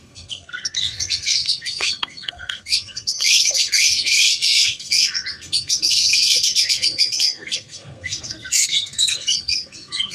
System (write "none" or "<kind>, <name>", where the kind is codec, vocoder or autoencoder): codec, SNAC